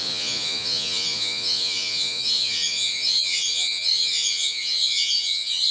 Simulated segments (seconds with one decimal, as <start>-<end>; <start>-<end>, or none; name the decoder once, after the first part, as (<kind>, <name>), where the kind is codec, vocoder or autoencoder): 0.0-5.7 (vocoder, Vocos)